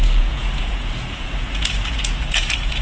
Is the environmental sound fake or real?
fake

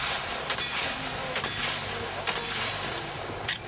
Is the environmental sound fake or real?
real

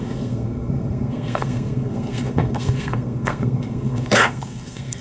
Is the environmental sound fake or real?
fake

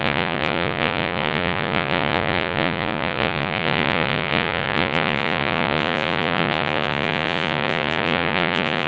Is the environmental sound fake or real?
fake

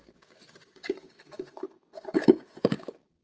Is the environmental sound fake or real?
fake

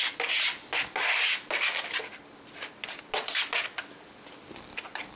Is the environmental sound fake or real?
real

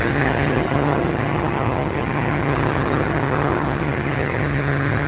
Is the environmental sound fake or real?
fake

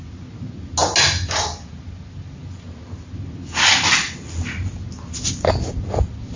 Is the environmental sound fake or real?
real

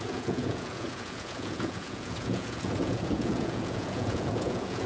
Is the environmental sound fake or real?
fake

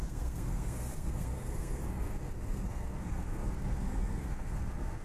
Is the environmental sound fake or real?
fake